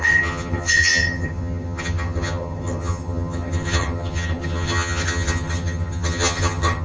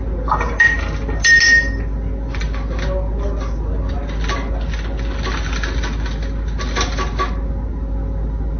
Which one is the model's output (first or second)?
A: first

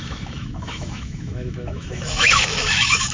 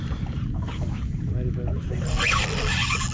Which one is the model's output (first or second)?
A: first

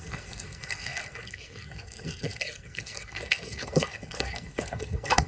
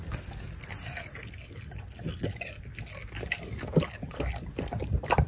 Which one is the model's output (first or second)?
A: first